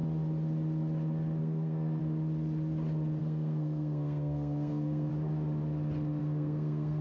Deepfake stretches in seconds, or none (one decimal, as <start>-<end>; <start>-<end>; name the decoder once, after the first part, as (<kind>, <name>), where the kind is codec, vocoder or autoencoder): 1.4-2.0 (codec, SNAC); 3.2-5.1; 6.2-7.0